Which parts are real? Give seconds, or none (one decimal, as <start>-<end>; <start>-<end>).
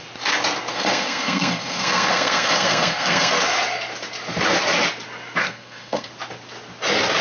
0.0-0.7; 3.3-5.4; 6.1-7.2